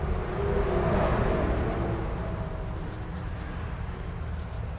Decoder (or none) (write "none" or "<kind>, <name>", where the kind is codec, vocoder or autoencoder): none